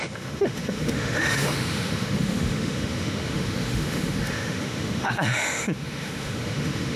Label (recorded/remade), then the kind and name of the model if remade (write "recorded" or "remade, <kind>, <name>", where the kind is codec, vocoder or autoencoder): remade, autoencoder, DAC-VAE